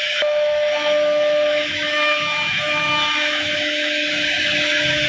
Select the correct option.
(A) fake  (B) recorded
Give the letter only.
A